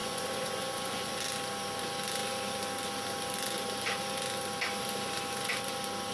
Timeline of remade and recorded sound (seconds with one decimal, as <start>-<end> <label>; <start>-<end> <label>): 0.0-1.2 remade; 1.2-6.1 recorded